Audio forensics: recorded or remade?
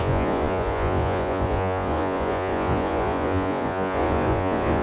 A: remade